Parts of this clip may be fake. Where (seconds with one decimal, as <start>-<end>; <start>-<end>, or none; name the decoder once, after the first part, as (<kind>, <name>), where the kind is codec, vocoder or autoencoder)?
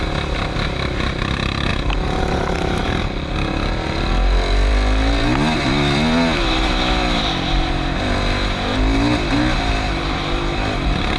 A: none